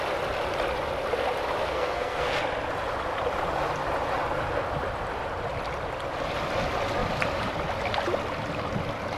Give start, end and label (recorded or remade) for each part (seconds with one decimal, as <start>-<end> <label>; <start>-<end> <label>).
0.0-1.6 recorded; 1.6-2.4 remade; 2.4-9.2 recorded